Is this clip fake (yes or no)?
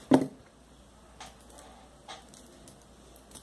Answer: no